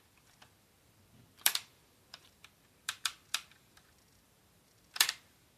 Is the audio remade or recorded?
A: remade